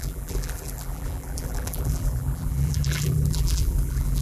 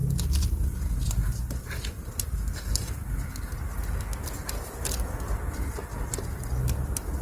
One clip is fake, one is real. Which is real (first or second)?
second